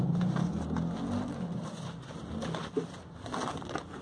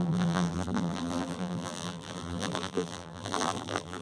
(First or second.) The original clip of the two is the first